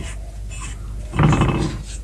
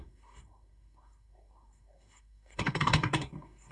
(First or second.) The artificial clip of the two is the second